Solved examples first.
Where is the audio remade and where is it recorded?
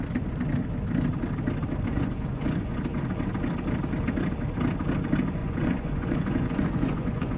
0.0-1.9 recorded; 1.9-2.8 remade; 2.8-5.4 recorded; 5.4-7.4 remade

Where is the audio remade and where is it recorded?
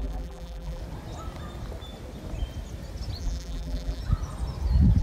0.0-0.8 remade; 0.8-3.2 recorded; 3.2-4.0 remade; 4.0-5.0 recorded